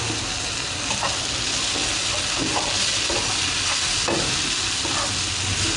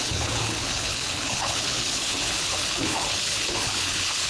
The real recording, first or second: first